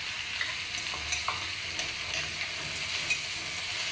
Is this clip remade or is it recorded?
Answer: recorded